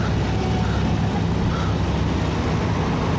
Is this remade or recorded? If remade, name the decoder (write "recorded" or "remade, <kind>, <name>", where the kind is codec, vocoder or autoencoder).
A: recorded